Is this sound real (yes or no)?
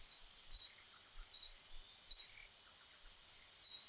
yes